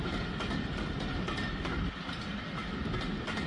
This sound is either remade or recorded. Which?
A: recorded